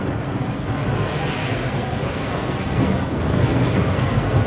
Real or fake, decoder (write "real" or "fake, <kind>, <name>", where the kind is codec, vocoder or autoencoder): fake, codec, SNAC